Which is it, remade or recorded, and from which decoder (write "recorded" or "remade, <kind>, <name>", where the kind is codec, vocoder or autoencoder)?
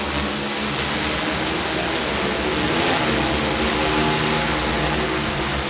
recorded